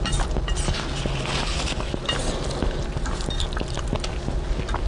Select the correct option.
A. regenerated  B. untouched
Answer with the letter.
B